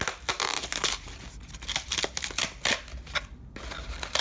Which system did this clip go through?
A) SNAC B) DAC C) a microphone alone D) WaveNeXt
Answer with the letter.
C